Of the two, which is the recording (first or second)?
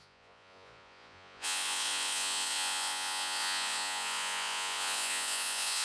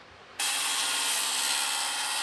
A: second